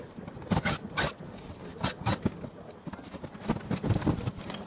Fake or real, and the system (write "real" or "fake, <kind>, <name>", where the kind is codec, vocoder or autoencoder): real